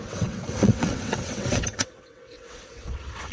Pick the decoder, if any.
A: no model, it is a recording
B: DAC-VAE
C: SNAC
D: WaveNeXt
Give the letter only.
D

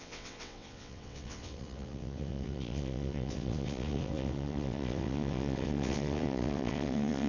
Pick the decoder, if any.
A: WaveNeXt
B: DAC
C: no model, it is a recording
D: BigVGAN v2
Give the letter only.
A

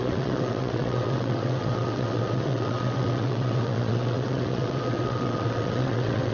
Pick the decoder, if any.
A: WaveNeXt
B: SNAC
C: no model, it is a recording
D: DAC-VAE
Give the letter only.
A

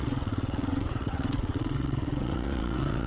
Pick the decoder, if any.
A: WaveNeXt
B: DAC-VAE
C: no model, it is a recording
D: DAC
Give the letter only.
A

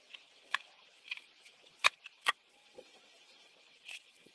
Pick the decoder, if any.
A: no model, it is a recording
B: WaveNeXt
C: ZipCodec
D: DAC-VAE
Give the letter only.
B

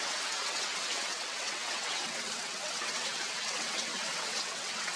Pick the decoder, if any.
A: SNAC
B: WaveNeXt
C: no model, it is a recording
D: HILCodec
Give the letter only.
B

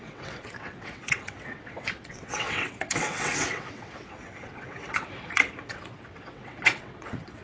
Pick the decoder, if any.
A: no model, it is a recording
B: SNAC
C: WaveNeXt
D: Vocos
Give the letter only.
C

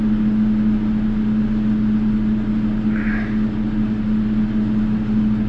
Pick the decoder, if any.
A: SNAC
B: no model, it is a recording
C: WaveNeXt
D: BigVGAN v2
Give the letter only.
B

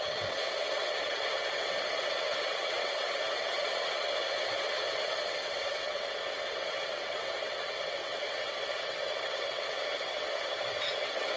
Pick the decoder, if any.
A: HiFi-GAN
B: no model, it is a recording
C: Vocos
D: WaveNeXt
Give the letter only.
D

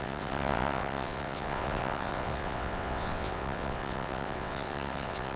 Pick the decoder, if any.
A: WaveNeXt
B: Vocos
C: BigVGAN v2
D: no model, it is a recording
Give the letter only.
A